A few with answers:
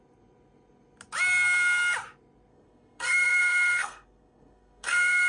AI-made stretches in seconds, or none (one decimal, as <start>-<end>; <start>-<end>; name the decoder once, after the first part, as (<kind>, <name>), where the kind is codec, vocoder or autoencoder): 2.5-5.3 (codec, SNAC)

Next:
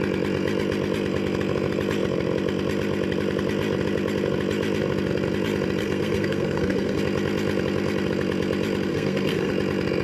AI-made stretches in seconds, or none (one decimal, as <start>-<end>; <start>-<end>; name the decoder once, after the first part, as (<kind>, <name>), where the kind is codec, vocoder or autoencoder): 5.8-7.0 (codec, SNAC); 8.9-9.5

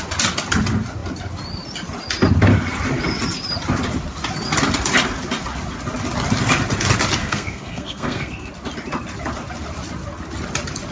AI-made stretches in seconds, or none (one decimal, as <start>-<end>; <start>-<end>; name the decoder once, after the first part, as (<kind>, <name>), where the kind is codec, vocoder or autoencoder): 7.2-8.5 (codec, SNAC)